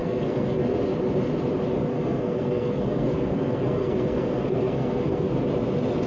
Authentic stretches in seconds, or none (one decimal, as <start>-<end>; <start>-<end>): 0.6-1.9; 5.3-6.1